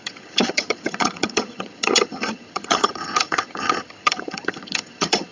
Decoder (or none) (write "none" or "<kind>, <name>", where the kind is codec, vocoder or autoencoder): vocoder, HiFi-GAN